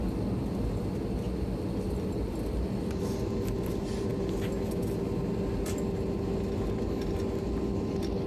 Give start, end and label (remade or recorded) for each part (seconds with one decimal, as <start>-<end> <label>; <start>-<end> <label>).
0.0-8.3 recorded